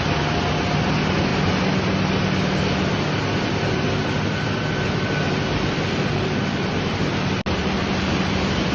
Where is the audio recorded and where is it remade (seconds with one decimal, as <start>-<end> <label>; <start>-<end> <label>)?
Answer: 0.0-5.5 recorded; 5.5-7.0 remade; 7.0-7.6 recorded; 7.6-8.7 remade